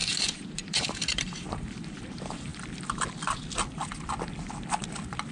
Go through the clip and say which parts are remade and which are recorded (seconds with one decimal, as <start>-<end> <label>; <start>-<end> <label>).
0.0-2.5 remade; 2.5-5.3 recorded